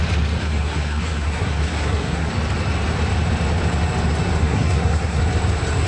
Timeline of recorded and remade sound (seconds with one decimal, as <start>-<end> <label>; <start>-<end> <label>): 0.0-0.4 recorded; 0.4-2.3 remade; 2.3-4.4 recorded; 4.4-5.2 remade; 5.2-5.9 recorded